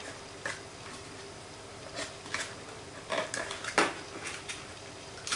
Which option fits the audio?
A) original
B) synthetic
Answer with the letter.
A